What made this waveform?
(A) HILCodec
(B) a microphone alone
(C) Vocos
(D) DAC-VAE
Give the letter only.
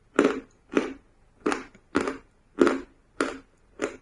B